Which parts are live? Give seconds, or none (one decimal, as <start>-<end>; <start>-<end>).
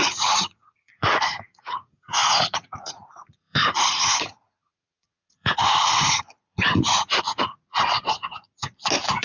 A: 8.2-9.2